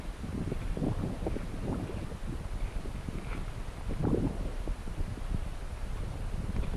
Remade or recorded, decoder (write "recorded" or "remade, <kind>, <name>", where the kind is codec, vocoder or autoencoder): recorded